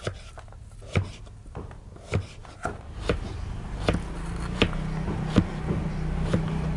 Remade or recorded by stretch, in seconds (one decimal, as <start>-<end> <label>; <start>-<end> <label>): 0.0-6.8 recorded